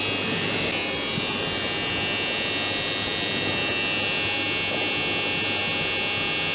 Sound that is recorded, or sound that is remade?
recorded